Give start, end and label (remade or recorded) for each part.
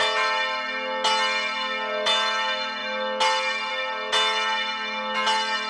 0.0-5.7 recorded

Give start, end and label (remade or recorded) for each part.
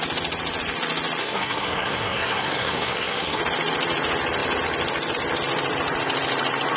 0.0-1.2 recorded; 1.2-3.4 remade; 3.4-6.8 recorded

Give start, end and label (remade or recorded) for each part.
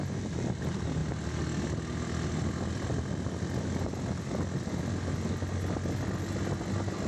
0.0-7.1 recorded